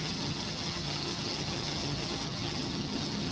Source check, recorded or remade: remade